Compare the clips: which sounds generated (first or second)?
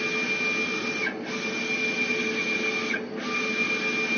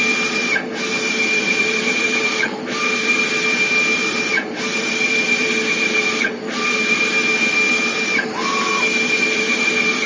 second